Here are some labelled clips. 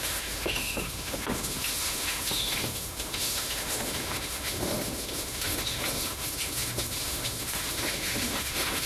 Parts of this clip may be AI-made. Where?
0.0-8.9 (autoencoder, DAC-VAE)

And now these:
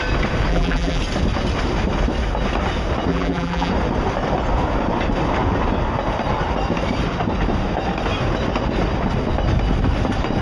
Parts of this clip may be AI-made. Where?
0.5-1.0 (vocoder, BigVGAN v2); 3.1-3.7